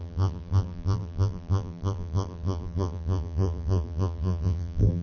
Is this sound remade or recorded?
remade